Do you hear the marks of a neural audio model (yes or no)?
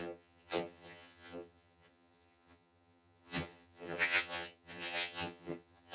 yes